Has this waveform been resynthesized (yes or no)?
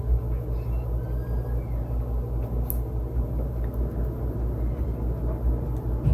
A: no